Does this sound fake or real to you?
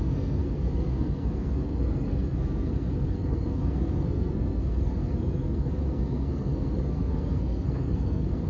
fake